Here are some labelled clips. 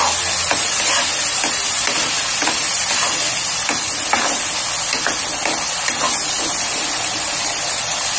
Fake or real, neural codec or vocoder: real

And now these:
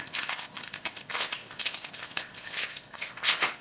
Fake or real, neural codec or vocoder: fake, codec, ZipCodec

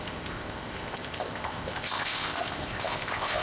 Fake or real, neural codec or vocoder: fake, codec, ZipCodec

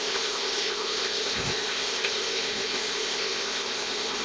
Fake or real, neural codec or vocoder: fake, codec, ZipCodec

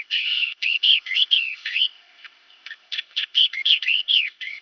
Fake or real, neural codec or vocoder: fake, codec, ZipCodec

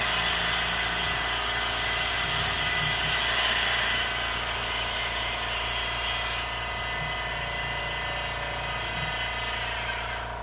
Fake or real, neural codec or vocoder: real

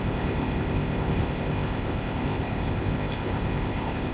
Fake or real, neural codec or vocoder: fake, codec, ZipCodec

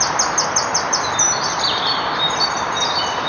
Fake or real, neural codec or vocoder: real